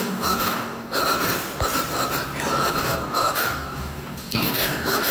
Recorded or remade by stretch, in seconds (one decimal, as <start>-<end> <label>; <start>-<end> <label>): 0.0-1.0 remade; 1.0-2.7 recorded; 2.7-5.1 remade